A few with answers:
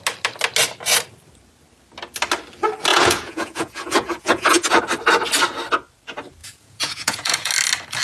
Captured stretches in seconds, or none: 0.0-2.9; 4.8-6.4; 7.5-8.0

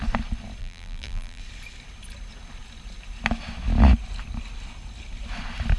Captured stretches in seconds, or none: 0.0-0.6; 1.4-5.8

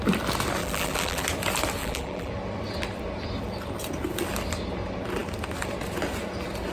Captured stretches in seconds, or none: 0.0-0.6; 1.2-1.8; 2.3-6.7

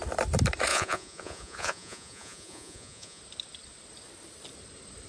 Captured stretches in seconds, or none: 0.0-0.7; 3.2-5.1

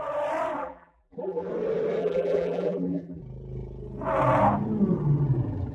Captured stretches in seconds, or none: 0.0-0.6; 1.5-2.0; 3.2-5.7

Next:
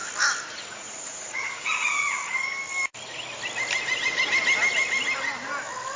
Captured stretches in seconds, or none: 0.0-0.7; 2.2-6.0

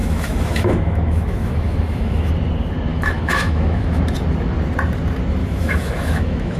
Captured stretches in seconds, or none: 2.3-2.9; 4.0-5.4